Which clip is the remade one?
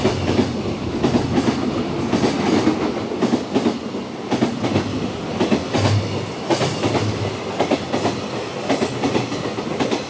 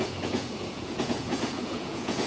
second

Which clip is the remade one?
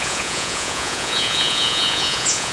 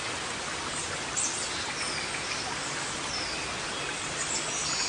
first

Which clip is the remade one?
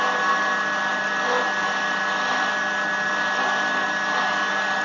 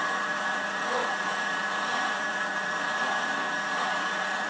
second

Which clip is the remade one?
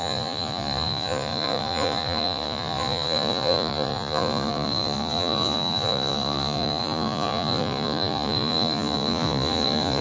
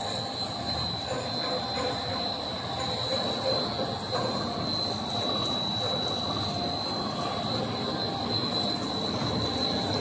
first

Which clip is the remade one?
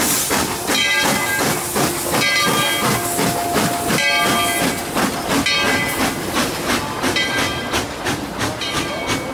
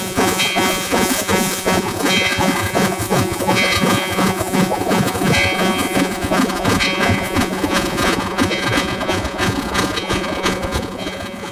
second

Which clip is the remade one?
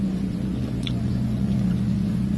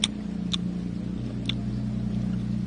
first